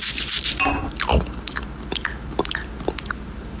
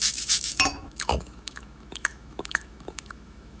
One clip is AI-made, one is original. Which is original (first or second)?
first